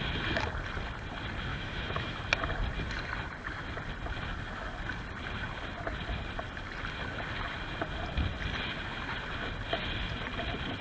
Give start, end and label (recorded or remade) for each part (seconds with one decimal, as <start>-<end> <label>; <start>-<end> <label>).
0.0-1.5 recorded; 1.5-2.2 remade; 2.2-10.8 recorded